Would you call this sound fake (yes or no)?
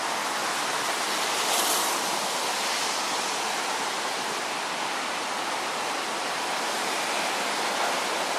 no